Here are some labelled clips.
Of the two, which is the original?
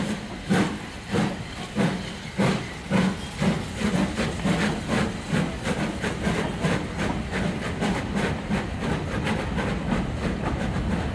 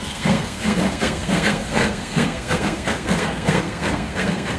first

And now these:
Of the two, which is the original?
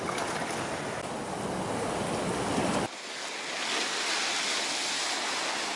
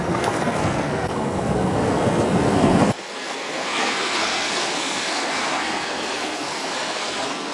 first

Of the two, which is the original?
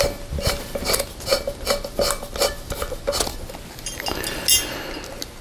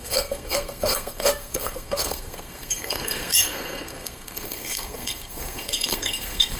first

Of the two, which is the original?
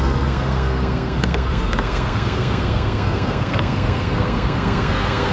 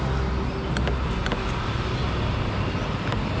second